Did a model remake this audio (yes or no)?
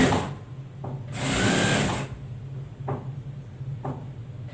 no